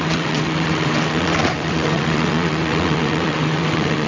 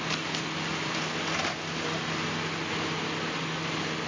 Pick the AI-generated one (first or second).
first